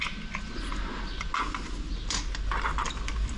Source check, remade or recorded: recorded